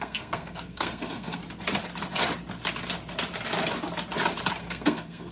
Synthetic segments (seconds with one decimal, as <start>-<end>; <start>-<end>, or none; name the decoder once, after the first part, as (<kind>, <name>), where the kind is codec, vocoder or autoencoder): 0.0-1.4 (codec, SNAC); 4.6-5.3